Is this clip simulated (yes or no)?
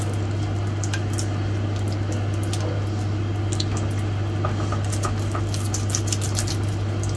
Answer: no